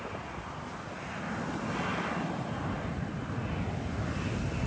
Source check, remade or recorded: recorded